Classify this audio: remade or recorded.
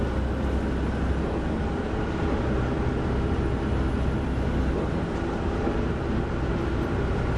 recorded